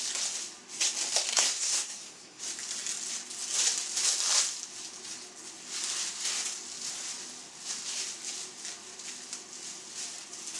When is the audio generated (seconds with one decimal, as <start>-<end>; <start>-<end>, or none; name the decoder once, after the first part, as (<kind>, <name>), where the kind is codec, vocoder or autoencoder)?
1.3-2.4 (codec, SNAC)

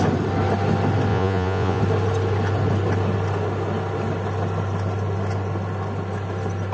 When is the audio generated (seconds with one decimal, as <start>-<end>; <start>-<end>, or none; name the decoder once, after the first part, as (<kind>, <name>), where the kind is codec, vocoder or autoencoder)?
1.1-1.8 (vocoder, Vocos)

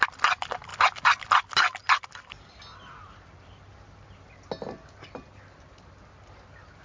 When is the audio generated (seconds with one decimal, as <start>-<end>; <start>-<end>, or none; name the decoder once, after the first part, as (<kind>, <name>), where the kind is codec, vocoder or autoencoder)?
none

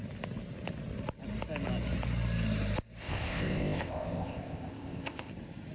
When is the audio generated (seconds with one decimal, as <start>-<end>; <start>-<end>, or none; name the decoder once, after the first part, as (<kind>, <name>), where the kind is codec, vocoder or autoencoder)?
3.0-5.3 (codec, ZipCodec)

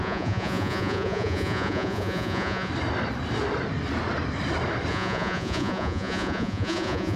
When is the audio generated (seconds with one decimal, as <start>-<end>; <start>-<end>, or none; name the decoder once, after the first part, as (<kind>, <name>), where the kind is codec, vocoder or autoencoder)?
0.0-2.7 (vocoder, Vocos); 4.9-7.2

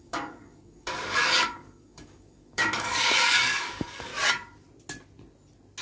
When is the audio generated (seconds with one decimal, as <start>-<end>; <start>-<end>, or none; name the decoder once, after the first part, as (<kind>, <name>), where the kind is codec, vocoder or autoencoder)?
0.0-4.1 (codec, DAC)

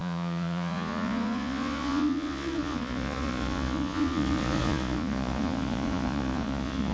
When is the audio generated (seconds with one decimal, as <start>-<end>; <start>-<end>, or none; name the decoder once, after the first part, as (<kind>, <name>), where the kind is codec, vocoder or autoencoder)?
0.0-6.9 (vocoder, Vocos)